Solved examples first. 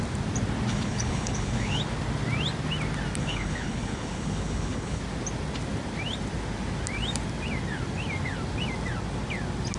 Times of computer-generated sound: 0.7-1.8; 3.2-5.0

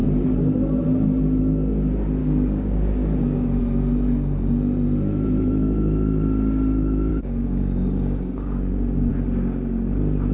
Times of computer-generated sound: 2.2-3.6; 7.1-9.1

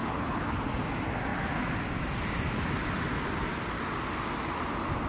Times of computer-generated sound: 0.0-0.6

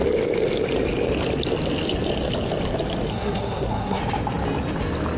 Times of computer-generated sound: 3.1-4.0